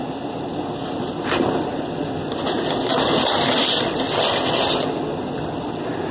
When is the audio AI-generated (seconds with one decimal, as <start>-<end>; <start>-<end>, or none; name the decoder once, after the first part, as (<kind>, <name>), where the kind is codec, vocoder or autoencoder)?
none